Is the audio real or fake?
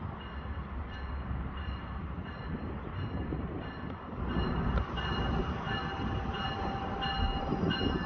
real